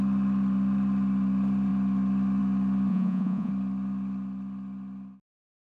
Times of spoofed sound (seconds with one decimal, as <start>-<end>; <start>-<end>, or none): 2.9-3.5